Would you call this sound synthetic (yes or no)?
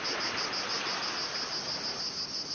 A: no